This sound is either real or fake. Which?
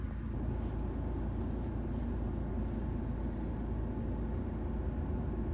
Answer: real